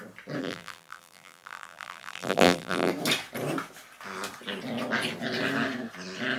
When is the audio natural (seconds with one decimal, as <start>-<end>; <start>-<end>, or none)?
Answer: 0.0-0.4; 2.9-6.4